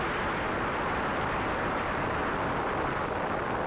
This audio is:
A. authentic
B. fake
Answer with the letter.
A